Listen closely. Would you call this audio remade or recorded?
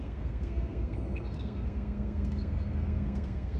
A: remade